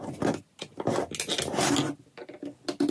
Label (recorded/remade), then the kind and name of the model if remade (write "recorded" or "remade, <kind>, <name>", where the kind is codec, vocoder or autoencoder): recorded